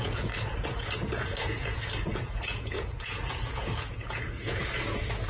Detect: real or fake fake